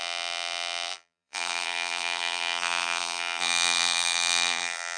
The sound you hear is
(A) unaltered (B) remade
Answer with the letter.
B